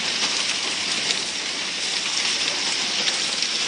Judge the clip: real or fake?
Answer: real